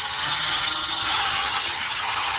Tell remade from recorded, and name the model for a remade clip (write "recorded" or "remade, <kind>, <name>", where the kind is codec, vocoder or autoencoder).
remade, vocoder, HiFi-GAN